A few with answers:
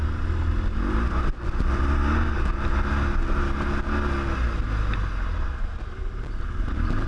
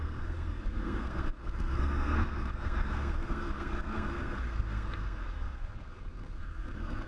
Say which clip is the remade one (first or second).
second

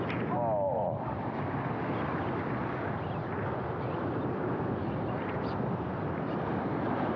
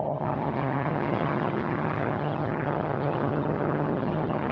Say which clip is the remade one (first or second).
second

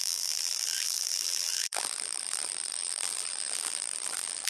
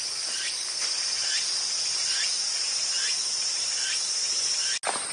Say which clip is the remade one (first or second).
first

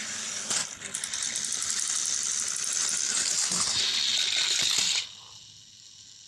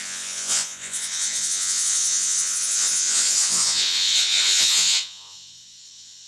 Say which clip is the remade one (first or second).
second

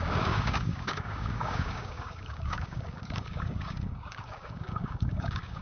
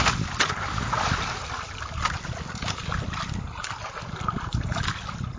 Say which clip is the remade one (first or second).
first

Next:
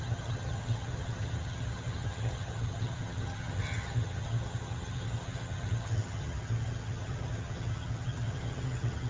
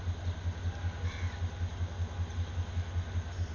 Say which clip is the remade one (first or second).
first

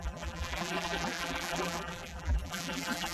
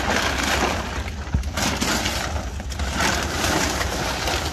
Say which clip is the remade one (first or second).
first